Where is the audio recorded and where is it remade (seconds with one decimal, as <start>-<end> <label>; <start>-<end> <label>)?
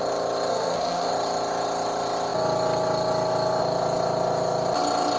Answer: 0.0-0.5 recorded; 0.5-1.1 remade; 1.1-5.2 recorded